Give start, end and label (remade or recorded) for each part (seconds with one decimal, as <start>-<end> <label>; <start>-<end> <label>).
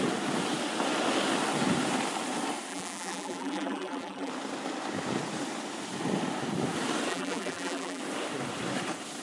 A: 0.0-2.7 recorded; 2.7-4.3 remade; 4.3-7.1 recorded; 7.1-8.0 remade; 8.0-9.2 recorded